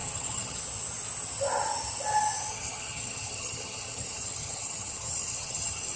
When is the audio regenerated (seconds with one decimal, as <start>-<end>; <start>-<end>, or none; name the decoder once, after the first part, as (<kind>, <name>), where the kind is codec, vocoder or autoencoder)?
0.0-0.6 (vocoder, HiFi-GAN); 2.5-6.0